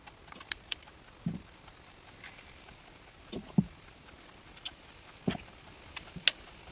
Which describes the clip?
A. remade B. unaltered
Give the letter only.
B